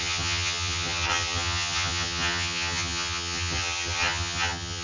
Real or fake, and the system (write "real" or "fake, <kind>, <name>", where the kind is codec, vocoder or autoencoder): fake, vocoder, HiFi-GAN